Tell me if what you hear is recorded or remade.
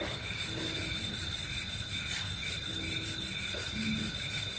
recorded